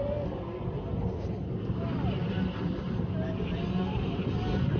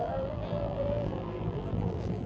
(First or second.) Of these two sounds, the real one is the first